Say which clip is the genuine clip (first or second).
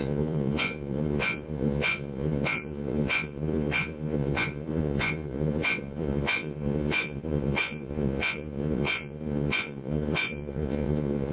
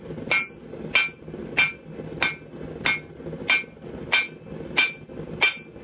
second